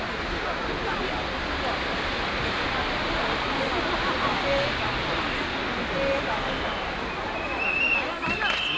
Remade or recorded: recorded